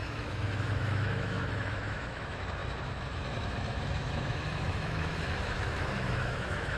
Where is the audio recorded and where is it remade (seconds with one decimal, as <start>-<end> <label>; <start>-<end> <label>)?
0.0-6.8 remade